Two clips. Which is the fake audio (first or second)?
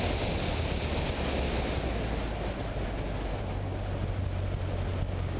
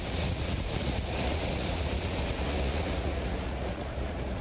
second